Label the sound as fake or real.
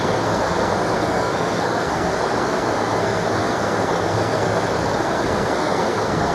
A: fake